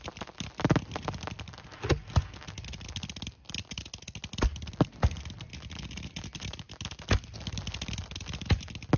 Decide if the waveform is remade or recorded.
recorded